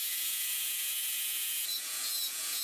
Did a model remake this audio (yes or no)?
yes